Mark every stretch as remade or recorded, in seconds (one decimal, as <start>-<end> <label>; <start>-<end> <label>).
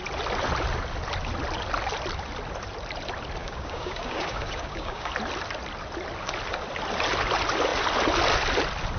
0.0-3.4 recorded; 3.4-5.1 remade; 5.1-9.0 recorded